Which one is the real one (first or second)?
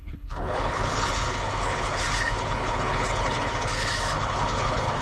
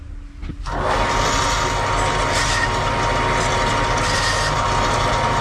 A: second